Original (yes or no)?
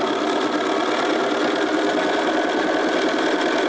yes